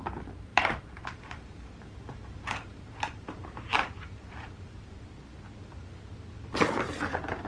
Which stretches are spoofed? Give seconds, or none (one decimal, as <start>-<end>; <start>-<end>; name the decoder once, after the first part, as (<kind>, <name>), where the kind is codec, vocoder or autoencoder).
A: 0.5-4.8 (vocoder, BigVGAN v2)